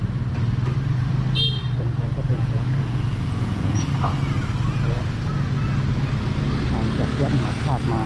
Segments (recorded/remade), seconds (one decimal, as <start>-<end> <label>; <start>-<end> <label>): 0.0-2.3 recorded; 2.3-3.9 remade; 3.9-8.1 recorded